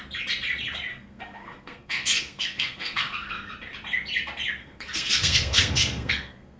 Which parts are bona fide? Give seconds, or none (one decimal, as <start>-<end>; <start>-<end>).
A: 0.0-0.9; 3.5-4.6